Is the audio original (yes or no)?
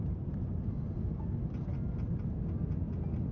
yes